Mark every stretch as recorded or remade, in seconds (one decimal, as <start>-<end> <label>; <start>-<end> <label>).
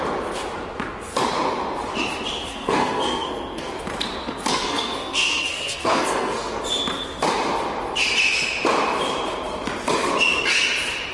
0.0-2.5 recorded; 2.5-3.7 remade; 3.7-4.5 recorded; 4.5-6.6 remade; 6.6-11.1 recorded